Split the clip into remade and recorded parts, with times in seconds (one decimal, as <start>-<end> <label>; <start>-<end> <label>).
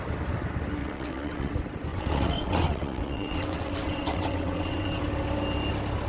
0.0-0.8 recorded; 0.8-1.5 remade; 1.5-1.9 recorded; 1.9-5.0 remade; 5.0-6.1 recorded